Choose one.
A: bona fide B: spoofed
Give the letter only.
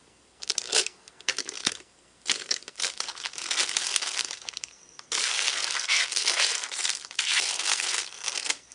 B